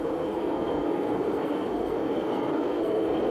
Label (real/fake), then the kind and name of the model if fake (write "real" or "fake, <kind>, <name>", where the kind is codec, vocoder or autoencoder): fake, codec, SNAC